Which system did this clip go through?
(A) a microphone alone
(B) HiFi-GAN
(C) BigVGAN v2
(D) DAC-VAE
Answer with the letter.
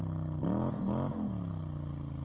A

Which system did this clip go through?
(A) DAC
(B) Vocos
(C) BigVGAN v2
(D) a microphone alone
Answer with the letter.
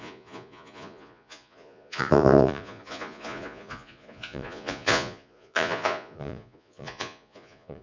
B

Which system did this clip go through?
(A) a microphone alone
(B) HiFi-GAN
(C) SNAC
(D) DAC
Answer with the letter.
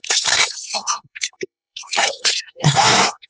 C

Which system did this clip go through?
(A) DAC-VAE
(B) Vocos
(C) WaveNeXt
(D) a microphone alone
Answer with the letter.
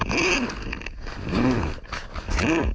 D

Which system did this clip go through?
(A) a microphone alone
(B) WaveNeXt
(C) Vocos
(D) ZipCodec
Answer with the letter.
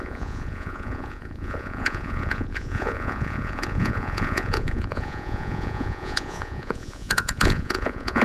C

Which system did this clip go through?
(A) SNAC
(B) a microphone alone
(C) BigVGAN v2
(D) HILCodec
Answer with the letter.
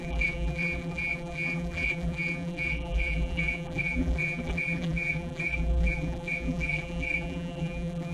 C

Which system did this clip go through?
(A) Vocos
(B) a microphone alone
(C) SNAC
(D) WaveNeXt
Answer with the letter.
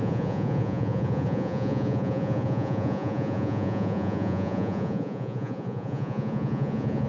A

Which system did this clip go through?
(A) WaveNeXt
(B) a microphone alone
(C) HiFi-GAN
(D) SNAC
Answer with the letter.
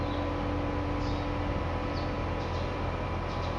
B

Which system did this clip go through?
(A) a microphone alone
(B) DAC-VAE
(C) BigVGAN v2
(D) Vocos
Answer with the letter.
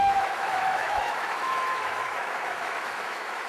B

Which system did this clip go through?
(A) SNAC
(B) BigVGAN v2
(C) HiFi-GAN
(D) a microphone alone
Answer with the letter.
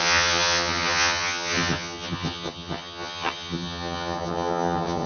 C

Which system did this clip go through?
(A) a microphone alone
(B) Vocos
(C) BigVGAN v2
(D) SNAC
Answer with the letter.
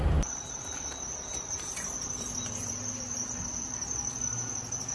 C